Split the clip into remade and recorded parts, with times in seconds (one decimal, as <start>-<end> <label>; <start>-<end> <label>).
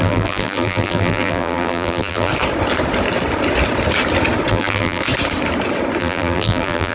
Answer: 0.0-2.3 remade; 2.3-4.5 recorded; 4.5-5.0 remade; 5.0-6.0 recorded; 6.0-6.9 remade